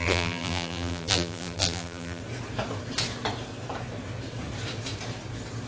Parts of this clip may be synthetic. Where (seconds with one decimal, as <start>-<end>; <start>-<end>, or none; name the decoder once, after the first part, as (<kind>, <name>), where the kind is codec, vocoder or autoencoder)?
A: 0.0-2.2 (vocoder, BigVGAN v2)